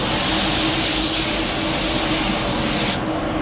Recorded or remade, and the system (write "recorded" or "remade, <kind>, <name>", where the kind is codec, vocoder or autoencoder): recorded